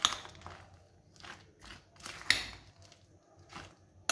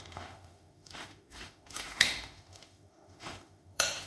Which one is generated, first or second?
second